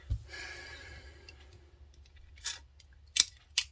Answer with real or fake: real